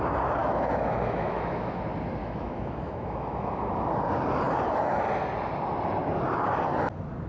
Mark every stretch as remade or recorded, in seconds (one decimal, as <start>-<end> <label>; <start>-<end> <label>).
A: 0.0-0.4 recorded; 0.4-1.8 remade; 1.8-2.2 recorded; 2.2-3.7 remade; 3.7-7.3 recorded